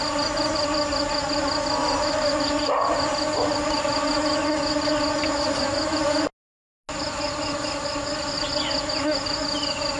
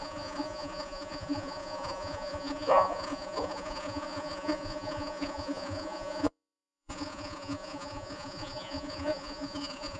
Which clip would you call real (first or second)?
first